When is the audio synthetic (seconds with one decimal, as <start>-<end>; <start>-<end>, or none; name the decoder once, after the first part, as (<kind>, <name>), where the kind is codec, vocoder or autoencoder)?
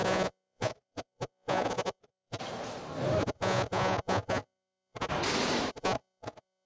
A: 0.0-2.4 (vocoder, Vocos); 3.2-5.1; 5.7-6.7